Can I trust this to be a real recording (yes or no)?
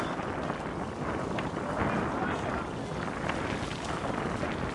yes